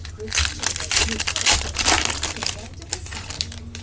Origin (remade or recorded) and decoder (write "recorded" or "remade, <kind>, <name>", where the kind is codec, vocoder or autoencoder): recorded